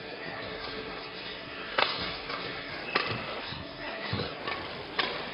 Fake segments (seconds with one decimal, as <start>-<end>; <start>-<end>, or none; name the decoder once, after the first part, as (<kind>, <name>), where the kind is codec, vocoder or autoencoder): 0.0-2.7 (codec, SNAC); 3.4-4.4